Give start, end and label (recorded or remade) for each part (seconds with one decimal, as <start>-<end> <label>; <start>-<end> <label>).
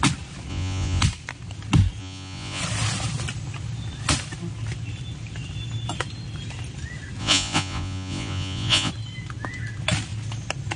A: 0.0-0.5 recorded; 0.5-1.0 remade; 1.0-2.0 recorded; 2.0-2.6 remade; 2.6-7.2 recorded; 7.2-8.9 remade; 8.9-10.8 recorded